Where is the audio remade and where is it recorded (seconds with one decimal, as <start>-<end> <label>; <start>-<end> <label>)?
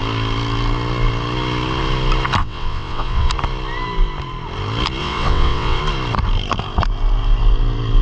0.0-2.4 recorded; 2.4-3.3 remade; 3.3-5.0 recorded; 5.0-5.8 remade; 5.8-8.0 recorded